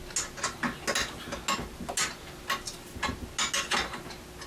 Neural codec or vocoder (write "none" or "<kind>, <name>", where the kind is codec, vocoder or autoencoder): none